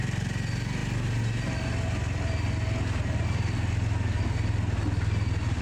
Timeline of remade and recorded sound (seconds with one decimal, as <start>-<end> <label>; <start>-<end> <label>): 0.0-5.6 recorded